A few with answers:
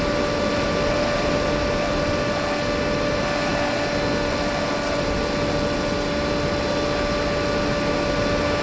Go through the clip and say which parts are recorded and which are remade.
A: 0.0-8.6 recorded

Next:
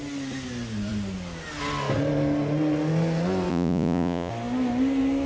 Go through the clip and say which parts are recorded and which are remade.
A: 0.0-3.5 recorded; 3.5-4.3 remade; 4.3-5.3 recorded

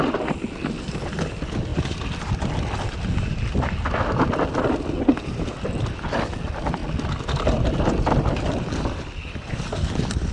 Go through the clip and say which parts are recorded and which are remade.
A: 0.0-10.3 recorded

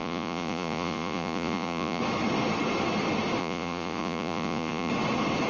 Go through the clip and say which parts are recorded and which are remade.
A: 0.0-2.0 remade; 2.0-3.4 recorded; 3.4-4.9 remade; 4.9-5.5 recorded